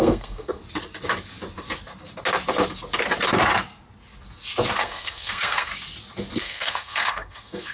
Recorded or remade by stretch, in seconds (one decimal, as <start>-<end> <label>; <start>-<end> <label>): 0.0-0.6 remade; 0.6-4.8 recorded; 4.8-5.7 remade; 5.7-6.4 recorded; 6.4-7.7 remade